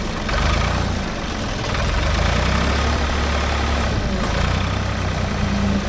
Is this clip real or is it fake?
real